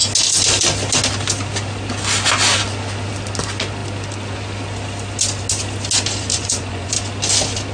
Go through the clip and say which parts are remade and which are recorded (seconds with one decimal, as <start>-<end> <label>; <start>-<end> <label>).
0.0-6.3 recorded; 6.3-6.9 remade; 6.9-7.7 recorded